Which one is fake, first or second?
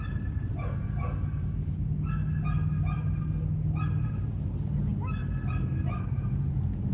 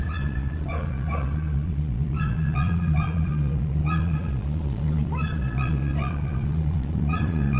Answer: second